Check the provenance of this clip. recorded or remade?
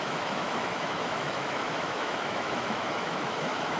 remade